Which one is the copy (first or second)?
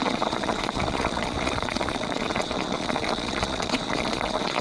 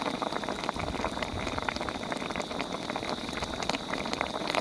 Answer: first